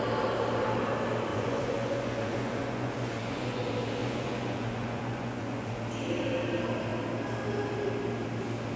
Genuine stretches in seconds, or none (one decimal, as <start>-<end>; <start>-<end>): 0.0-1.3; 3.6-4.0; 5.8-8.8